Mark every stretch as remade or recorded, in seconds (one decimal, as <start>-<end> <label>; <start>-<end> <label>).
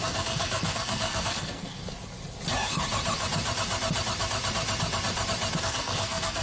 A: 0.0-1.8 remade; 1.8-5.6 recorded; 5.6-6.4 remade